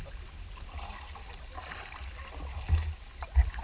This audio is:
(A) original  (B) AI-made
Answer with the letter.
A